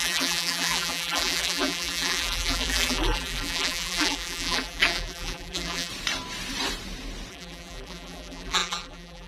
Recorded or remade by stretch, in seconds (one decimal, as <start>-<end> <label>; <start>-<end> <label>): 0.0-5.9 remade; 5.9-7.3 recorded; 7.3-9.3 remade